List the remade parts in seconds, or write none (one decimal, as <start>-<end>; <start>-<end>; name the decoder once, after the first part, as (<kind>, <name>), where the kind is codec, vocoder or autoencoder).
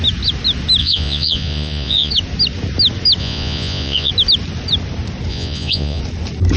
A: 0.8-2.1 (vocoder, Vocos); 3.2-4.1; 5.3-6.0